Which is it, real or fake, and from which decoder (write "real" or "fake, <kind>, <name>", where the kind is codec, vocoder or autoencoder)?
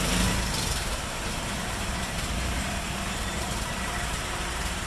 fake, vocoder, BigVGAN v2